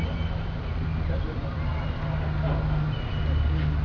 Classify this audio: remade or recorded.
recorded